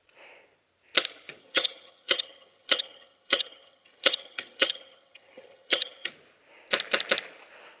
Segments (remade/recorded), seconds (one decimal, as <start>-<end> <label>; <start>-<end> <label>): 0.0-1.4 recorded; 1.4-6.1 remade; 6.1-7.8 recorded